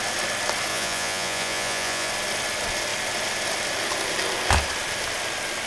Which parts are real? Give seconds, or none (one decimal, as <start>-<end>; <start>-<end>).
0.0-0.7; 2.1-5.7